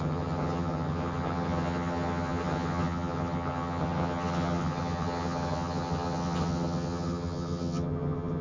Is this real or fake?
fake